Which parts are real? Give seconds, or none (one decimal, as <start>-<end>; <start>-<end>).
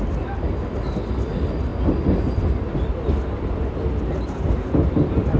0.0-5.4